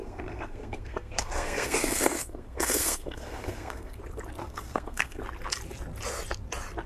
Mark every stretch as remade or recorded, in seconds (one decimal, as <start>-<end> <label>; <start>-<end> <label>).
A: 0.0-4.0 remade; 4.0-4.4 recorded; 4.4-5.2 remade; 5.2-6.9 recorded